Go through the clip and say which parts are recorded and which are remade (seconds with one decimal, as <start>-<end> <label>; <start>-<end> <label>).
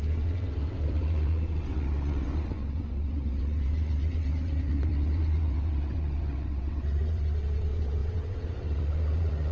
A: 0.0-9.5 remade